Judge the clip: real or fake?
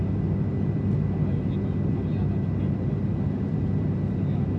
real